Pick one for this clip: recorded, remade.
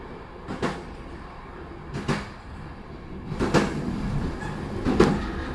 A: recorded